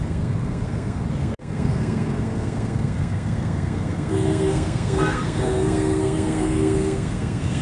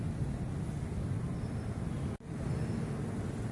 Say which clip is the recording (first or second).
second